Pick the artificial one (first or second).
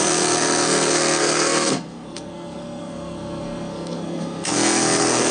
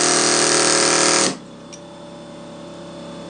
first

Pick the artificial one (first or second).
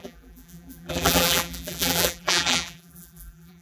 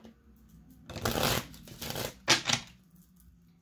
first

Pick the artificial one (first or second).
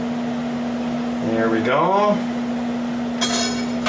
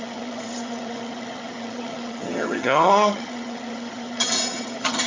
second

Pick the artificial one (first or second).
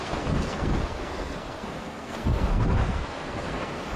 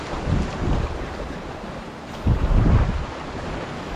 first